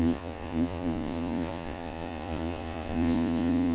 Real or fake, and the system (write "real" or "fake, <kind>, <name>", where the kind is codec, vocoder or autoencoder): fake, vocoder, Vocos